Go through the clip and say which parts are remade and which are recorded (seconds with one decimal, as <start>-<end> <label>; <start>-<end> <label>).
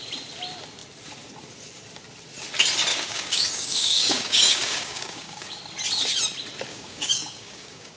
0.0-2.9 recorded; 2.9-5.6 remade; 5.6-6.7 recorded; 6.7-8.0 remade